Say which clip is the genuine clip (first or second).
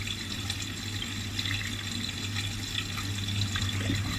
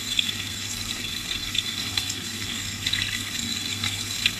first